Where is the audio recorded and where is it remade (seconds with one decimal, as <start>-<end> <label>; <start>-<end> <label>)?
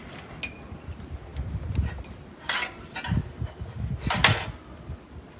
0.0-5.4 recorded